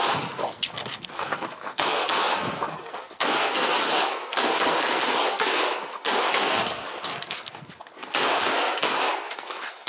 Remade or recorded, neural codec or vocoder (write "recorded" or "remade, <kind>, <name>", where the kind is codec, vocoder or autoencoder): remade, codec, SNAC